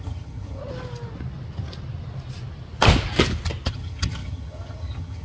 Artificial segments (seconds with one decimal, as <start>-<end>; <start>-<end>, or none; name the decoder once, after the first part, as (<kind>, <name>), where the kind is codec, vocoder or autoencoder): 0.0-0.6 (vocoder, HiFi-GAN); 3.7-5.2